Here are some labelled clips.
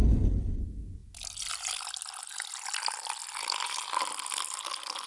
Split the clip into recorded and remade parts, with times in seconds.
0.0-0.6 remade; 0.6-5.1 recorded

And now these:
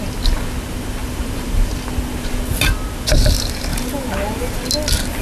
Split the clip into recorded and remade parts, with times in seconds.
0.0-1.0 recorded; 1.0-1.7 remade; 1.7-3.7 recorded; 3.7-4.7 remade; 4.7-5.2 recorded

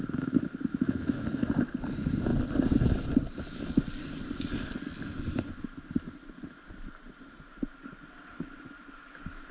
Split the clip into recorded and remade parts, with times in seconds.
0.0-0.7 recorded; 0.7-1.5 remade; 1.5-9.5 recorded

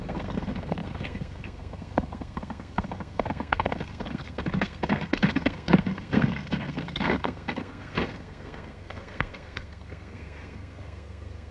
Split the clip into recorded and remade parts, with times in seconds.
0.0-11.5 remade

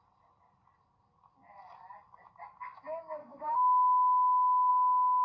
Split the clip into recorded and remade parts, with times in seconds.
0.0-3.2 recorded; 3.2-4.7 remade; 4.7-5.2 recorded

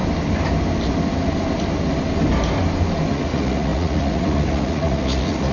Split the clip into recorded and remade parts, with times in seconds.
0.0-3.1 recorded; 3.1-5.5 remade